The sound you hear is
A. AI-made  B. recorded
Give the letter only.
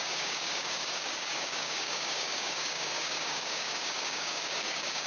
A